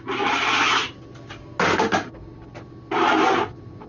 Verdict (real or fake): real